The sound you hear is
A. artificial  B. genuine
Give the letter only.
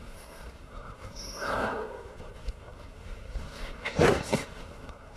A